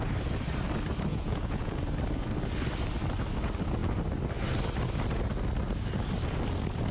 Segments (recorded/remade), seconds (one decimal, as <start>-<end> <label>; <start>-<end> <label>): 0.0-1.1 recorded; 1.1-1.8 remade; 1.8-6.9 recorded